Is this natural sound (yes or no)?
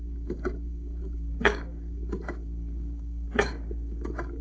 no